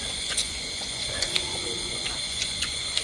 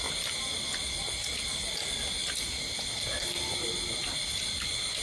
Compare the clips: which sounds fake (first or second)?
first